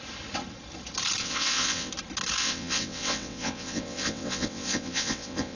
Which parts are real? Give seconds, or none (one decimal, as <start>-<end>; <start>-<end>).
0.0-1.2; 1.9-2.4